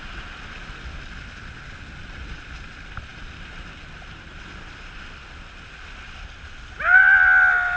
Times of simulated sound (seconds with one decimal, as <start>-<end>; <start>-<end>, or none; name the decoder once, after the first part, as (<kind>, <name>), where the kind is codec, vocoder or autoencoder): none